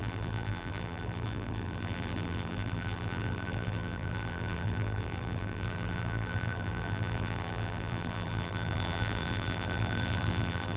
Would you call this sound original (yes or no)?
no